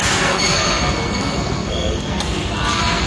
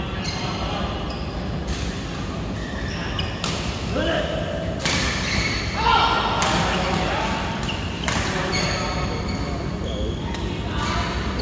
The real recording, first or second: second